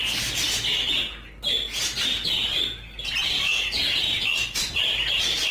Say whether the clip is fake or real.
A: real